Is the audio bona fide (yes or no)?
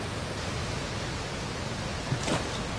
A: yes